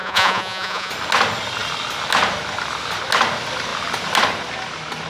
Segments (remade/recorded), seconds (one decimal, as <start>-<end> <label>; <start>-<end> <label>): 0.0-0.9 remade; 0.9-5.1 recorded